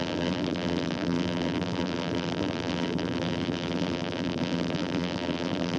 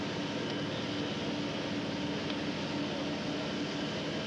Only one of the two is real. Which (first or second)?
second